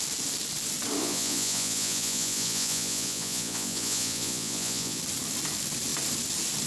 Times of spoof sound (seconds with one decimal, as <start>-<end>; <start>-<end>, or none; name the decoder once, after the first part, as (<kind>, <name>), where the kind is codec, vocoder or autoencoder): 1.0-5.0 (vocoder, Vocos)